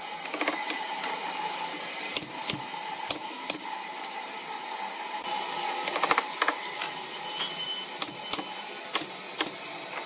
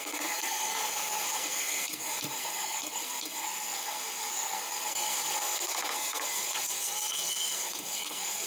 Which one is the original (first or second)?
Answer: first